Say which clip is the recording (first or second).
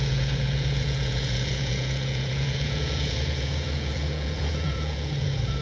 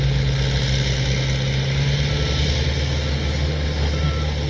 second